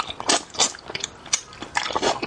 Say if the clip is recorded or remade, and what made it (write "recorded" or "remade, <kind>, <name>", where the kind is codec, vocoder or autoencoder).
recorded